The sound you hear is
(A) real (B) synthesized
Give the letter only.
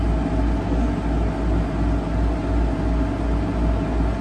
A